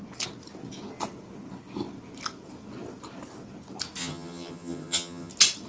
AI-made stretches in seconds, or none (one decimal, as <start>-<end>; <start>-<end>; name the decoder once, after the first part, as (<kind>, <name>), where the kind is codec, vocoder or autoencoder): 4.0-5.3 (vocoder, HiFi-GAN)